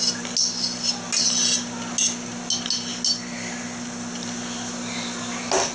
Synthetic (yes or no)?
no